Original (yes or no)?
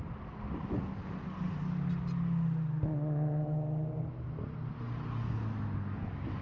yes